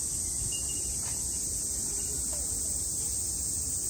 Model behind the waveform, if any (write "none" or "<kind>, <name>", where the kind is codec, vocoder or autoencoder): none